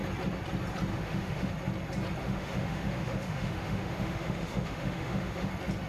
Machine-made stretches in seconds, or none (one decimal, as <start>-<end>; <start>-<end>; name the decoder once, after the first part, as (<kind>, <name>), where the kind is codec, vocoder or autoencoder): 0.9-1.5 (autoencoder, DAC-VAE); 2.2-5.5